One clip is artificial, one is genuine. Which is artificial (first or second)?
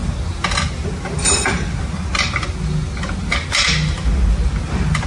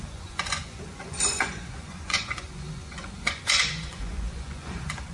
second